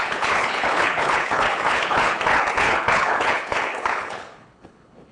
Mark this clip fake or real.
fake